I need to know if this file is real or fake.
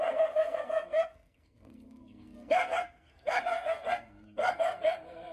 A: fake